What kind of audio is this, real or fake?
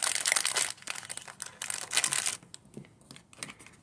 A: real